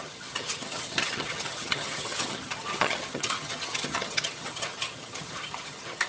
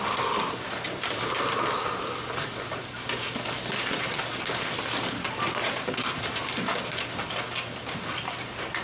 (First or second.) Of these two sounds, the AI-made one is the first